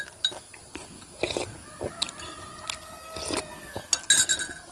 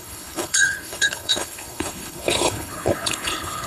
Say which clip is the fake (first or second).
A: second